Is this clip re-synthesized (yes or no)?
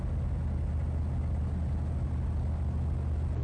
no